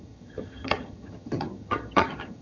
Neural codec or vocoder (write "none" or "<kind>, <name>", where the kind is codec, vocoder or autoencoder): vocoder, HiFi-GAN